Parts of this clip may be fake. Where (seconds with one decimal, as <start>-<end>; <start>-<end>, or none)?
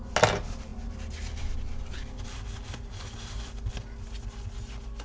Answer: none